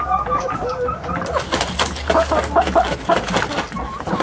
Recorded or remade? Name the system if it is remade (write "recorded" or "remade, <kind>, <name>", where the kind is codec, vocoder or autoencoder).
recorded